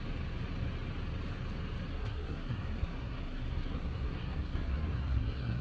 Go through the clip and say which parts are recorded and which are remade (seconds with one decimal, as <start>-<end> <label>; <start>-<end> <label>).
0.0-1.9 recorded; 1.9-5.6 remade